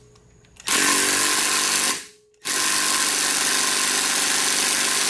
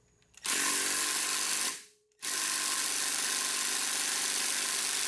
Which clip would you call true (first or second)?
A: first